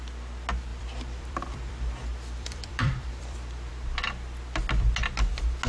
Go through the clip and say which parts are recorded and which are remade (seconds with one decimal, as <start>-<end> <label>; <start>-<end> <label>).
0.0-0.7 recorded; 0.7-3.7 remade; 3.7-5.7 recorded